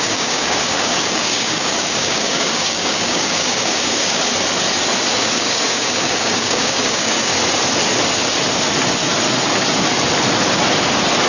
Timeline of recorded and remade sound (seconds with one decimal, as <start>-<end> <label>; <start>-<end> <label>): 0.0-4.3 remade; 4.3-5.3 recorded; 5.3-7.3 remade; 7.3-11.3 recorded